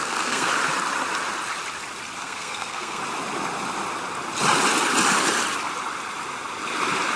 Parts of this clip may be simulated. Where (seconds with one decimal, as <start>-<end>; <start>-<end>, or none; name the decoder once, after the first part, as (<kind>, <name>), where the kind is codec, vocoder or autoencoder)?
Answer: 0.0-0.5 (codec, SNAC); 2.2-3.0